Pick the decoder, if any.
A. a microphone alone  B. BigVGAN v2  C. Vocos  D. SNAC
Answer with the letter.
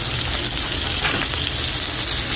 A